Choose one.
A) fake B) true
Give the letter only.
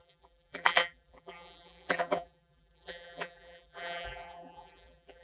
A